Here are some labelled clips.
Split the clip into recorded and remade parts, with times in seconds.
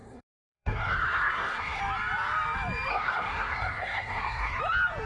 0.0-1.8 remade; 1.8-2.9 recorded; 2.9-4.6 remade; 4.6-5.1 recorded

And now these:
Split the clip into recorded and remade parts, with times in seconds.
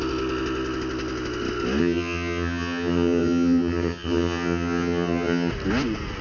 0.0-1.8 recorded; 1.8-5.5 remade; 5.5-6.2 recorded